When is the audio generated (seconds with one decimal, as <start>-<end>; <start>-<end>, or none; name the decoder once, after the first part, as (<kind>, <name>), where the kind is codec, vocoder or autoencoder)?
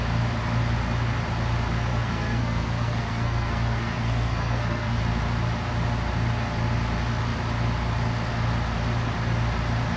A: 1.9-5.0 (codec, SNAC)